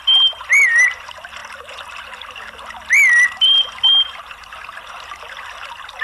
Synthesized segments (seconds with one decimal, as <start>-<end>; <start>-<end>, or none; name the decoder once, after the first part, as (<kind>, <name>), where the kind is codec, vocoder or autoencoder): none